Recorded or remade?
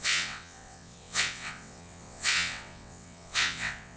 remade